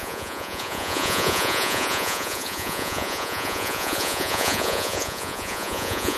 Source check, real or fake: fake